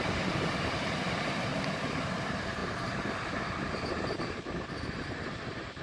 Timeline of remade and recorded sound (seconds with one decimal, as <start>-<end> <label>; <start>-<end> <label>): 0.0-1.5 remade; 1.5-2.2 recorded; 2.2-5.8 remade